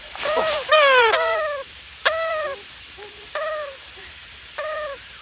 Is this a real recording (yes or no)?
no